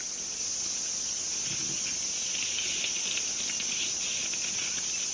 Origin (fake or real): real